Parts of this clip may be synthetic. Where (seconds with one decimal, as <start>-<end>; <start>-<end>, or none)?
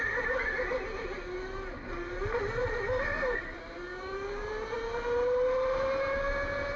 3.9-4.5